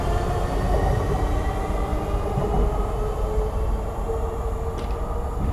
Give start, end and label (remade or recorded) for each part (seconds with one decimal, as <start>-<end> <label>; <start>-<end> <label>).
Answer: 0.0-5.5 recorded